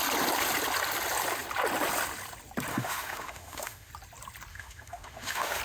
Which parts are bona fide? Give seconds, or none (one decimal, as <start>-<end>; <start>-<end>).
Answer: 0.0-2.7; 3.9-4.5